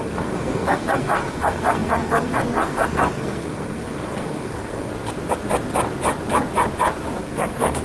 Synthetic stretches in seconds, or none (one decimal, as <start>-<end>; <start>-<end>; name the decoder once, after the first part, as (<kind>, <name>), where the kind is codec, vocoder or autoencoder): 0.0-4.9 (codec, SNAC); 7.2-7.8